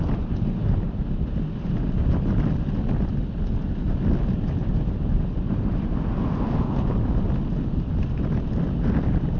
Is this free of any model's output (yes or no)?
yes